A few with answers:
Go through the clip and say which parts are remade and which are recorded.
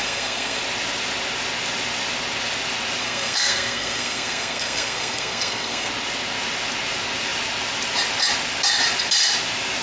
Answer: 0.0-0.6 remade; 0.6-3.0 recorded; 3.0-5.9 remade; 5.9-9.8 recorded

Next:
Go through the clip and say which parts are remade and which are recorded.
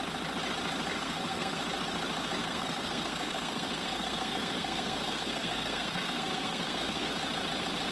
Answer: 0.0-0.9 recorded; 0.9-1.6 remade; 1.6-2.4 recorded; 2.4-7.1 remade; 7.1-7.9 recorded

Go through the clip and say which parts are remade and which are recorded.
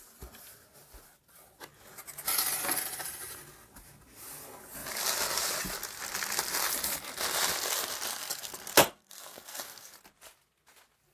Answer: 0.0-8.1 recorded; 8.1-9.9 remade; 9.9-11.1 recorded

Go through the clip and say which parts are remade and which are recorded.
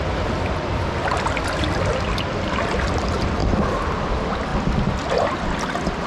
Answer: 0.0-6.1 recorded